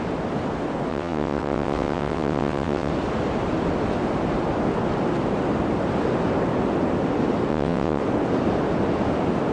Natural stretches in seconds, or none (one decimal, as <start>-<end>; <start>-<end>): 0.0-0.9; 2.9-7.5; 8.0-9.5